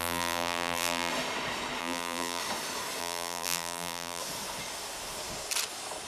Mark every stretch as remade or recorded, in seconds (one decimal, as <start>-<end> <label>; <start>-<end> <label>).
0.0-1.1 remade; 1.1-1.8 recorded; 1.8-2.4 remade; 2.4-3.0 recorded; 3.0-4.2 remade; 4.2-6.1 recorded

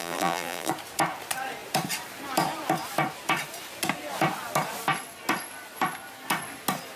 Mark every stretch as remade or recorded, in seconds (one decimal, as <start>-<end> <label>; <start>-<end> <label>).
0.0-0.7 remade; 0.7-7.0 recorded

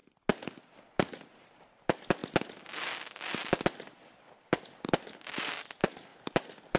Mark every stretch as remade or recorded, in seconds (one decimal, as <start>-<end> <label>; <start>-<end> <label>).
0.0-6.1 recorded; 6.1-6.8 remade

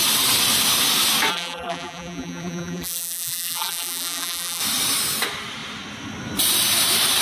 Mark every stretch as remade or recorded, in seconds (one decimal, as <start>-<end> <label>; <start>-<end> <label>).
0.0-1.3 recorded; 1.3-4.6 remade; 4.6-7.2 recorded

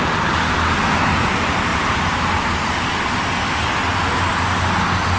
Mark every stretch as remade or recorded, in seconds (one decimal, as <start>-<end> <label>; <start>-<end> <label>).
0.0-1.7 recorded; 1.7-2.3 remade; 2.3-5.2 recorded

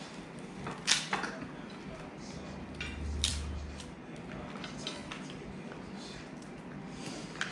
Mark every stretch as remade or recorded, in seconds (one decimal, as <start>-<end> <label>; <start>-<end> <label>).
0.0-7.5 recorded

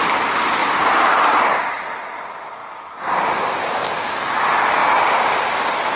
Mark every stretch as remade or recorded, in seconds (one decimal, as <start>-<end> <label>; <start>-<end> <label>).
0.0-0.6 recorded; 0.6-1.9 remade; 1.9-2.6 recorded; 2.6-4.1 remade; 4.1-4.8 recorded; 4.8-6.0 remade

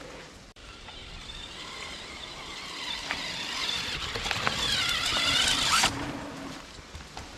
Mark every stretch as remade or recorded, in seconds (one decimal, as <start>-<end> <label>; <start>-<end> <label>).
0.0-7.4 remade